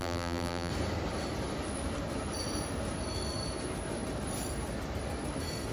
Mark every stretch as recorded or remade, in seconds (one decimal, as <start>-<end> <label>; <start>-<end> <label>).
0.0-0.7 remade; 0.7-5.7 recorded